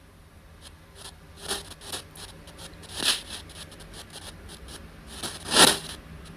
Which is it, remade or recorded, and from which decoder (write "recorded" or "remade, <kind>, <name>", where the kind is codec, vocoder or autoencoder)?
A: recorded